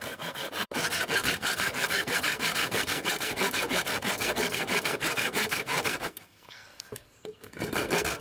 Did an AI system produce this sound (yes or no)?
yes